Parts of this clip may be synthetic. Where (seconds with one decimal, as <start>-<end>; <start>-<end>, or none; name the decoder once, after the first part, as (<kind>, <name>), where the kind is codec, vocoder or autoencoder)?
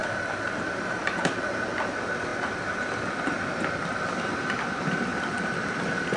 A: 0.0-0.9 (vocoder, BigVGAN v2); 5.1-5.8